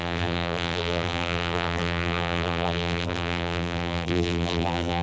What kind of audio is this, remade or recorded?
remade